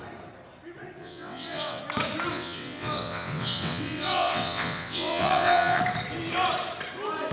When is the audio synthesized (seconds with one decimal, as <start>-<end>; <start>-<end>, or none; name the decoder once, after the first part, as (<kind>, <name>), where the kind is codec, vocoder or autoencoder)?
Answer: 1.0-1.8 (vocoder, WaveNeXt); 2.3-5.8